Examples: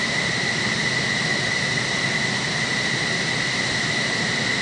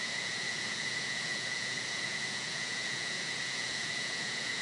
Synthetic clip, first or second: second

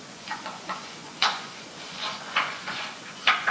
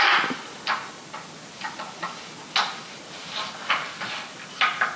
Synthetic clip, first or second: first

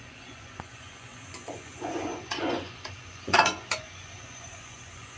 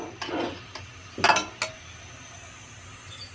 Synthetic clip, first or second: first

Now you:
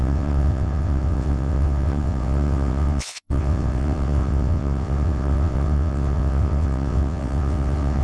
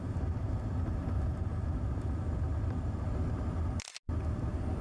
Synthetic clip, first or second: first